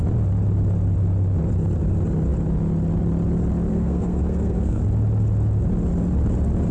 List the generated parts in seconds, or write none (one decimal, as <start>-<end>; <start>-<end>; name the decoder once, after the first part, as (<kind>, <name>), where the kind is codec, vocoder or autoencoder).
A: 3.7-4.8 (codec, SNAC)